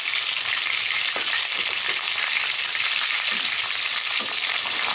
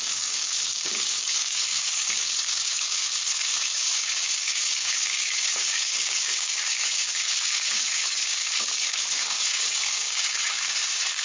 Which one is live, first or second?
first